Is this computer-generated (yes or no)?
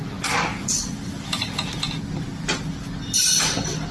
no